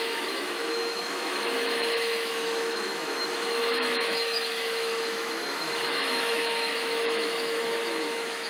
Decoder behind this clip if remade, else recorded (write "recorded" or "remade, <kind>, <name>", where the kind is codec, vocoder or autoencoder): remade, autoencoder, DAC-VAE